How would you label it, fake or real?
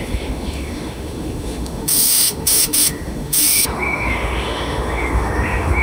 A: fake